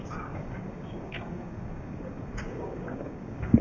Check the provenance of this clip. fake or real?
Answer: fake